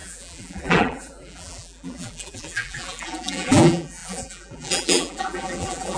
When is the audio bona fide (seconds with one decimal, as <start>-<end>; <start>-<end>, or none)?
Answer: none